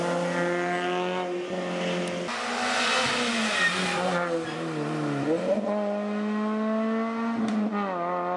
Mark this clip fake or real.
real